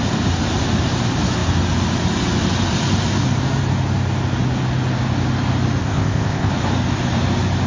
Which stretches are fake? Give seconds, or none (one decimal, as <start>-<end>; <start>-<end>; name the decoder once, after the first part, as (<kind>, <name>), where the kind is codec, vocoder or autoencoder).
5.8-6.5 (codec, ZipCodec)